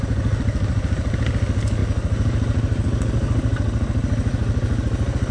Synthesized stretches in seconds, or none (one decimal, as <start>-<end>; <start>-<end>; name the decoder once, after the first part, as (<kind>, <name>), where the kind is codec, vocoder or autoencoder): none